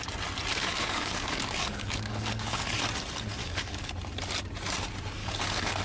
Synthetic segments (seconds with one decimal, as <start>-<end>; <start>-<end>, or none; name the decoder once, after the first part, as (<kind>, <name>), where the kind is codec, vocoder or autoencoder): 0.5-2.8 (codec, DAC); 3.4-3.9; 5.2-5.8